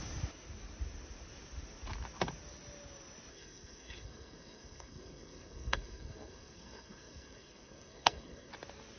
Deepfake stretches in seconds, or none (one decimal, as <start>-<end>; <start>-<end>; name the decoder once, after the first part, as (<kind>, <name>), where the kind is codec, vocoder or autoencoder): 3.3-8.5 (codec, SNAC)